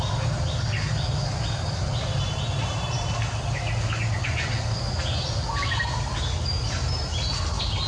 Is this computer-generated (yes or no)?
no